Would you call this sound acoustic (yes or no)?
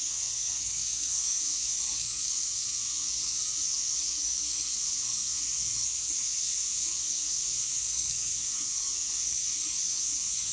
no